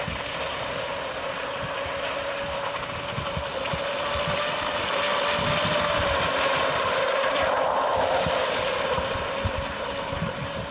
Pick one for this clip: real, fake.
real